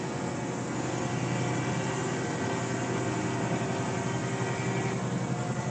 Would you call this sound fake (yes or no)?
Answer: no